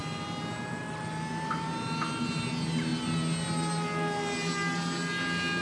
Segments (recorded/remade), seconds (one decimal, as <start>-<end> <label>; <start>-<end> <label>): 0.0-5.6 recorded